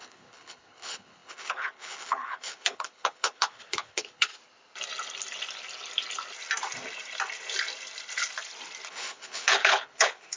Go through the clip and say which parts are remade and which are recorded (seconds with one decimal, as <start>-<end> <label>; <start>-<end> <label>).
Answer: 0.0-4.3 remade; 4.3-8.9 recorded; 8.9-10.4 remade